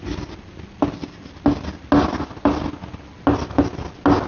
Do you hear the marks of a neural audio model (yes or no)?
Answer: no